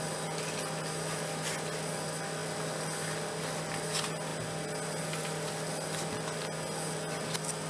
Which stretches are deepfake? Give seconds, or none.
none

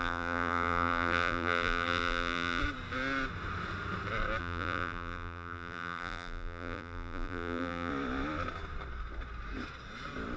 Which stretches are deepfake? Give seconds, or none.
0.0-2.6 (vocoder, BigVGAN v2); 4.4-7.9

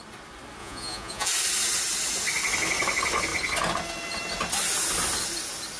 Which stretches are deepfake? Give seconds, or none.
0.6-1.3 (vocoder, Vocos)

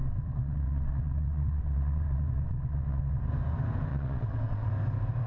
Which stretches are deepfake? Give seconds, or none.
0.0-3.2 (vocoder, WaveNeXt); 3.9-4.7

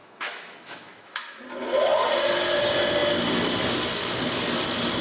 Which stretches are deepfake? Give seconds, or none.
0.0-1.4 (autoencoder, DAC-VAE)

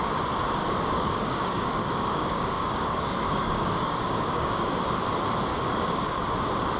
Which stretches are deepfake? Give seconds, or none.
0.6-4.7 (codec, DAC); 5.5-6.2

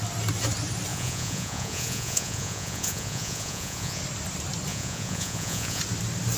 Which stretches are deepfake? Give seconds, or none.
0.9-4.0 (vocoder, Vocos); 4.7-5.8

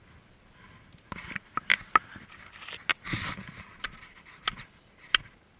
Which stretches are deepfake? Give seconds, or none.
none